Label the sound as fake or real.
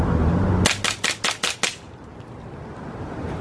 real